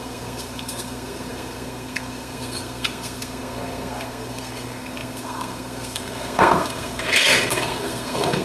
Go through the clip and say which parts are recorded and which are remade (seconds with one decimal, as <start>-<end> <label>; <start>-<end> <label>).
0.0-8.4 remade